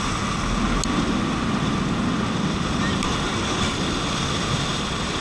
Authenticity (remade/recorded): recorded